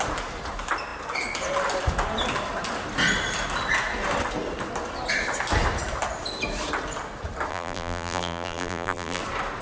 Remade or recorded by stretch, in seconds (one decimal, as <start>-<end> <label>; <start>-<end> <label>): 0.0-7.5 recorded; 7.5-9.2 remade; 9.2-9.6 recorded